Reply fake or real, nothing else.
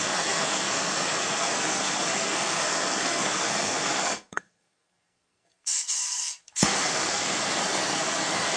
fake